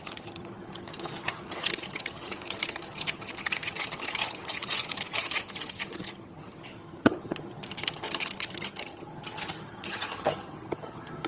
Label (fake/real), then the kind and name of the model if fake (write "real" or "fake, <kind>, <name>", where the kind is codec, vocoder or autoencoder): fake, vocoder, HiFi-GAN